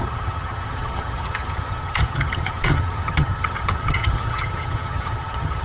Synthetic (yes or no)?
yes